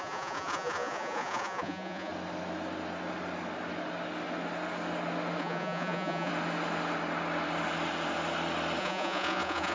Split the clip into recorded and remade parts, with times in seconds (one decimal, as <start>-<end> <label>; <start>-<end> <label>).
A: 0.0-2.1 remade; 2.1-5.4 recorded; 5.4-6.3 remade; 6.3-8.8 recorded; 8.8-9.7 remade